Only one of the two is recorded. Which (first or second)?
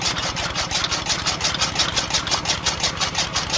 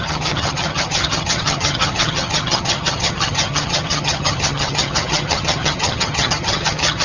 first